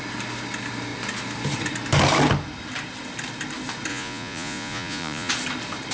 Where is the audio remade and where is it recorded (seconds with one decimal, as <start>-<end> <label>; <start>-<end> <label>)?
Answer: 0.0-3.9 recorded; 3.9-5.3 remade; 5.3-5.9 recorded